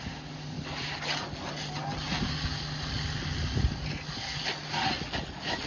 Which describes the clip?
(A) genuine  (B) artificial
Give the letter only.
A